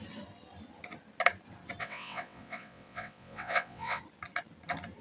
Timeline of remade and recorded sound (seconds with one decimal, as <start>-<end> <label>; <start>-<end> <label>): 0.0-1.8 recorded; 1.8-4.0 remade; 4.0-5.0 recorded